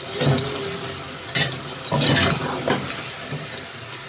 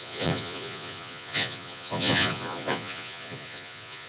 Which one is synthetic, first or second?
second